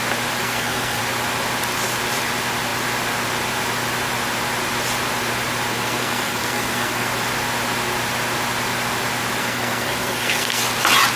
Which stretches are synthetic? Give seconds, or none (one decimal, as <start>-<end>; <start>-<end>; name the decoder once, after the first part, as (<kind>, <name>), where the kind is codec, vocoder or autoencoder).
0.4-1.0 (codec, SNAC); 5.7-7.1; 9.4-10.6